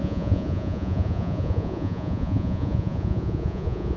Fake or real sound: fake